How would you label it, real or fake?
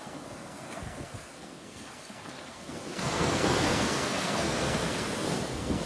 fake